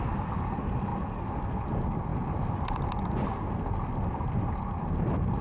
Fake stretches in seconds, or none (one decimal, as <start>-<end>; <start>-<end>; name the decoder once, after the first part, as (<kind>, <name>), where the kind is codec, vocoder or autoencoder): none